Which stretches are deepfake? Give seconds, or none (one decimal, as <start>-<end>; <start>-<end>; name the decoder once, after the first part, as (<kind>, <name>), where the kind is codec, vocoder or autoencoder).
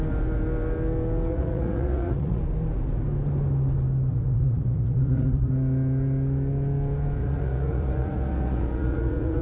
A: 1.3-2.4 (vocoder, Vocos); 4.1-5.5; 7.2-9.4